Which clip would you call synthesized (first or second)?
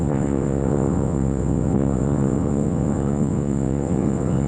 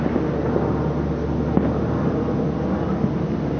first